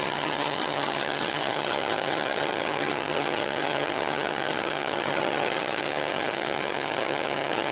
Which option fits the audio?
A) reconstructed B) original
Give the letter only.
A